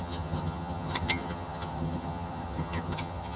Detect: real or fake fake